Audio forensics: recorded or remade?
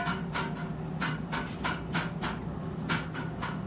recorded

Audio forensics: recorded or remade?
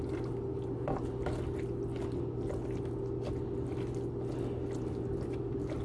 recorded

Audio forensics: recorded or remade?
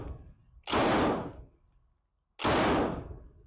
recorded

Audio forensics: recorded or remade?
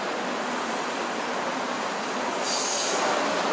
recorded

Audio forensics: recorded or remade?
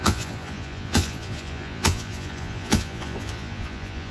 remade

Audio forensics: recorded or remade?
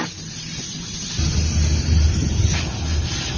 recorded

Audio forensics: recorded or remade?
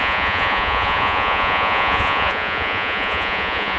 remade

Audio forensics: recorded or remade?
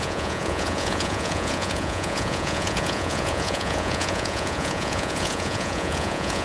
remade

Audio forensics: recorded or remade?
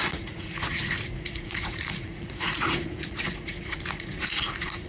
remade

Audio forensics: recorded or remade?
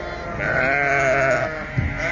recorded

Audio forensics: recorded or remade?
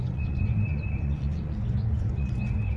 remade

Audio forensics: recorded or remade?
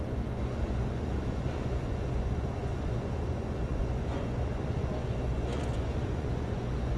remade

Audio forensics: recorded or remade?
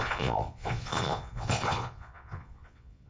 remade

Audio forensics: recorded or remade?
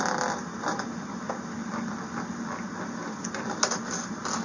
recorded